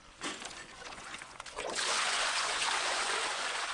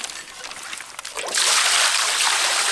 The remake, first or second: first